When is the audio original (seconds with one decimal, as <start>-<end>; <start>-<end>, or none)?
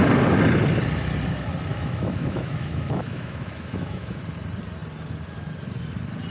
0.0-1.7; 4.2-6.3